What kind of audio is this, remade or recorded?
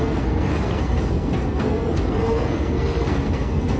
remade